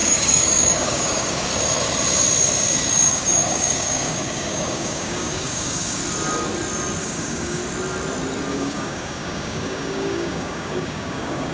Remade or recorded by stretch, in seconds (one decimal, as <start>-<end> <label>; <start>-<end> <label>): 0.0-1.5 remade; 1.5-3.1 recorded; 3.1-6.0 remade; 6.0-7.0 recorded; 7.0-7.6 remade; 7.6-8.5 recorded; 8.5-11.5 remade